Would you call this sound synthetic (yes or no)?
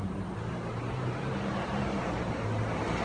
yes